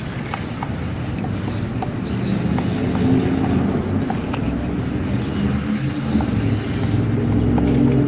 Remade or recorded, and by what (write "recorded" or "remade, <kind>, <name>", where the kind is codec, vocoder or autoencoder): recorded